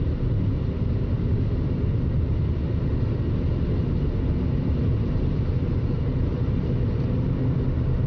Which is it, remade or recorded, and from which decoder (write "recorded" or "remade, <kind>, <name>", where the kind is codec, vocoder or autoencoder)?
recorded